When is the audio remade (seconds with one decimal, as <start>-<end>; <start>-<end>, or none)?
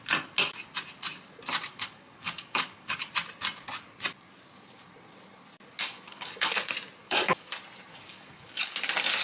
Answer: 1.7-3.0; 5.8-6.6; 7.0-7.5; 7.9-8.6